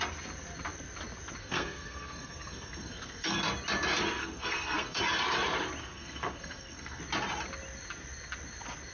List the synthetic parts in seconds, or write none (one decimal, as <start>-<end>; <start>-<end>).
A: 1.4-3.4; 4.2-5.0; 5.8-7.0

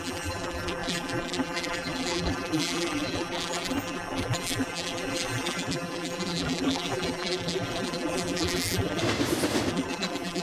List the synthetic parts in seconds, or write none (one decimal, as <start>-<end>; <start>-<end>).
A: 0.0-9.0; 9.7-10.4